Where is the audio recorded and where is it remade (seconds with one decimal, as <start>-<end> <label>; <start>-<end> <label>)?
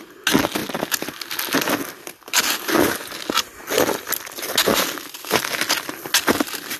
0.0-6.8 recorded